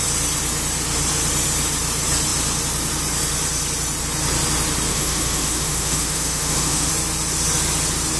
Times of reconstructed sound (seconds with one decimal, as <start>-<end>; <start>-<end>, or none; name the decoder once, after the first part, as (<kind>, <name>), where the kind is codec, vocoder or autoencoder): 4.9-6.9 (autoencoder, DAC-VAE)